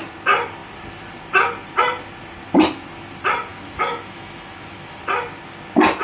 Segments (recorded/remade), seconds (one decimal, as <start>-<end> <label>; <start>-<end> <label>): 0.0-3.5 recorded; 3.5-5.0 remade; 5.0-6.0 recorded

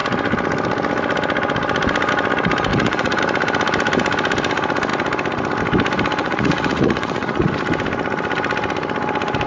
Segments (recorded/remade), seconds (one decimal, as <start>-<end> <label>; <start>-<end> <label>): 0.0-2.7 recorded; 2.7-3.2 remade; 3.2-6.2 recorded; 6.2-7.5 remade; 7.5-9.5 recorded

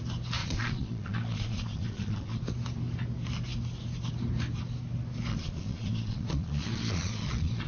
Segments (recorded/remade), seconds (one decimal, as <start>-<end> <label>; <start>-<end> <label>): 0.0-0.4 recorded; 0.4-2.4 remade; 2.4-5.3 recorded; 5.3-7.7 remade